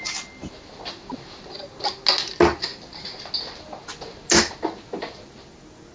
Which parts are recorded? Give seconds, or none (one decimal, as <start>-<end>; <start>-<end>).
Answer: 0.0-5.9

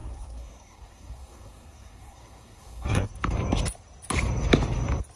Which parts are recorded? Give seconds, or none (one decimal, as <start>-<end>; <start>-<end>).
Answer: 3.1-5.2

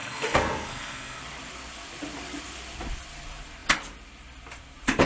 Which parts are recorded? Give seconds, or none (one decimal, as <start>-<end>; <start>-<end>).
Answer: 1.2-5.1

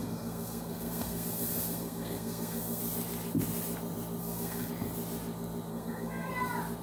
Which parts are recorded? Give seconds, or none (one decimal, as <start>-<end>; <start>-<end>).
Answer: 2.8-4.2; 4.7-5.7; 6.3-6.8